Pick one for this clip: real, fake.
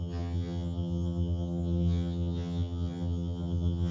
fake